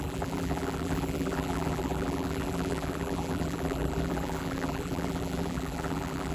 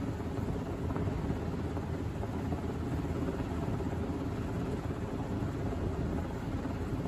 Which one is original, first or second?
second